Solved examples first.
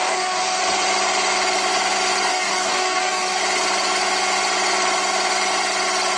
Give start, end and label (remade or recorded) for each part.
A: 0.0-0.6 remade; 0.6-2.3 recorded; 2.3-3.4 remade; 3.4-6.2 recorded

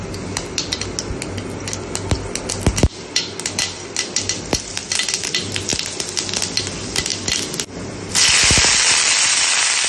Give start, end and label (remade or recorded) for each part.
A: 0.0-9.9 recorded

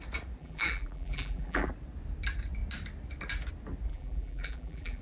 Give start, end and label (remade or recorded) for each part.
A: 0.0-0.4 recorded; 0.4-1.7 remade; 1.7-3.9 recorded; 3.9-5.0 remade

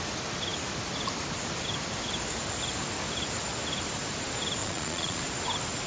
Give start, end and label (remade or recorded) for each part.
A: 0.0-4.6 recorded; 4.6-5.2 remade; 5.2-5.9 recorded